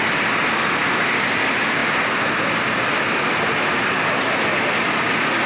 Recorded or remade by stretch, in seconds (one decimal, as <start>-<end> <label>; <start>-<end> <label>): 0.0-5.5 recorded